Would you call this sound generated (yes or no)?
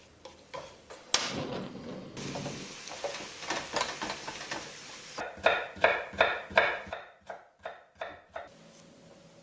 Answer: no